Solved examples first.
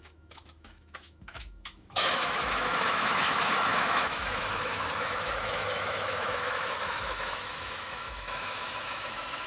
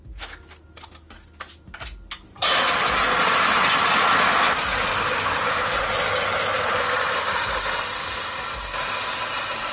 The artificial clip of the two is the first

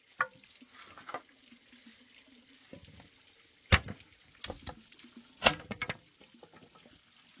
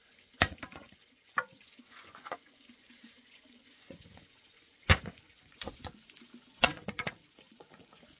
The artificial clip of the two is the second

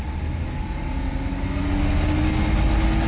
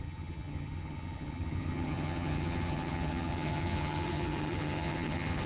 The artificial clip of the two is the second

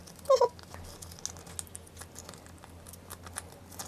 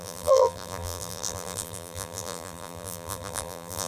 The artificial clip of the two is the second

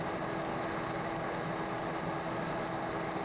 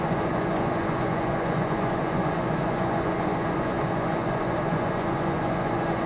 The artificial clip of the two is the second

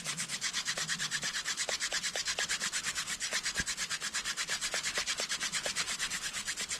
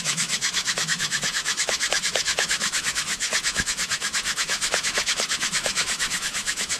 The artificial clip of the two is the second